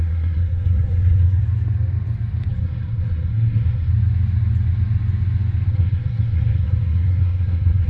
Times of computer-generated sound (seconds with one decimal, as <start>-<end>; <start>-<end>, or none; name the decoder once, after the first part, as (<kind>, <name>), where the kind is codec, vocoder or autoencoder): 0.0-1.4 (codec, SNAC); 2.5-3.9; 5.7-7.9